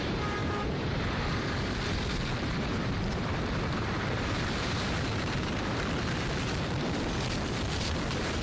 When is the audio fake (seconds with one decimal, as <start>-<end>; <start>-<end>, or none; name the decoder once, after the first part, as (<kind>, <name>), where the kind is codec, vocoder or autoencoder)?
0.0-8.4 (vocoder, BigVGAN v2)